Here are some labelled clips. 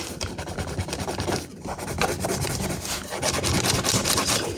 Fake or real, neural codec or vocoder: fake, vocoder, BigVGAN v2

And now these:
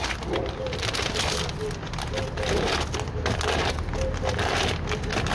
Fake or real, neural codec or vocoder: real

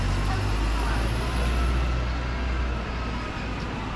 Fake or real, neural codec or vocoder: real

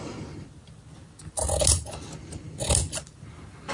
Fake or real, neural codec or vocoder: real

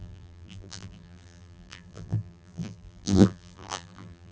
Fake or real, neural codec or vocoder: fake, vocoder, BigVGAN v2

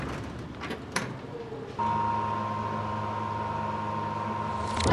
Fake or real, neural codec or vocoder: real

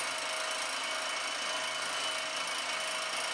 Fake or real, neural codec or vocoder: real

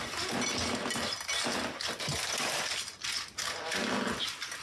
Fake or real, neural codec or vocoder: real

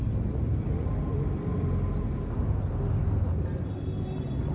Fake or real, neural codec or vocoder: real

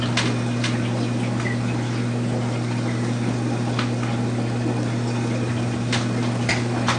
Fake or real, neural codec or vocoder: real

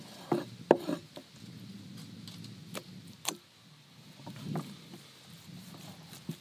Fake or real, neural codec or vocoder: real